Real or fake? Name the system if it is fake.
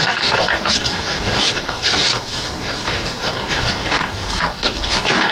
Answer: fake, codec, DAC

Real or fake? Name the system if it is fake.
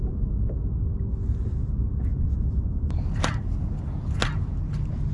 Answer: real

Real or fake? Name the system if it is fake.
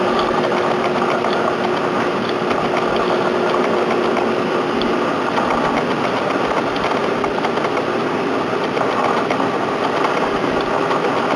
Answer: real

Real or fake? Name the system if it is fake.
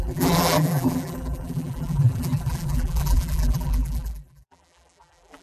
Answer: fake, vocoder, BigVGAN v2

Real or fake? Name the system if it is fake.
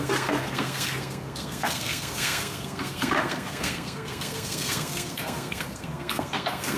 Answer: fake, codec, SNAC